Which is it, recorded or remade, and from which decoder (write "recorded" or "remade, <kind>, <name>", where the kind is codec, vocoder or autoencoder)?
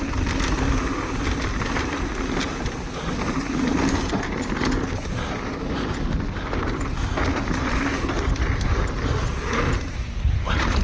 recorded